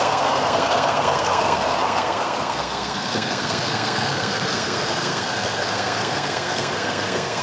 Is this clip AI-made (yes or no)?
yes